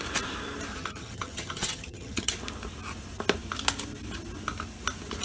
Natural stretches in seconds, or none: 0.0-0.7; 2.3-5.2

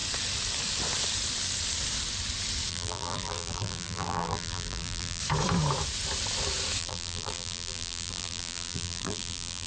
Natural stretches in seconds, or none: 0.0-2.7; 5.2-6.8

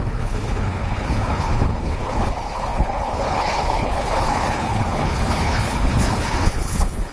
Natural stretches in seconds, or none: none

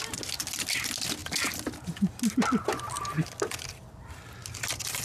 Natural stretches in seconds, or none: 0.0-5.0

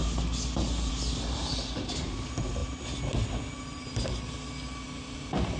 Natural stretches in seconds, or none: 0.0-5.6

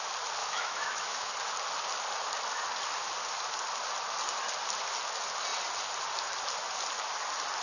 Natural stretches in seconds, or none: 0.0-0.4; 1.3-7.6

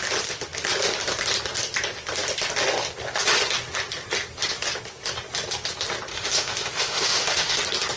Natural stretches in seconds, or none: 0.0-6.1; 7.6-8.0